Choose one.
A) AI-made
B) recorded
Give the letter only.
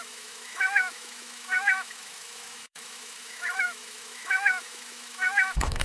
A